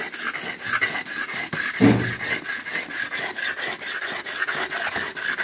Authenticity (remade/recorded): recorded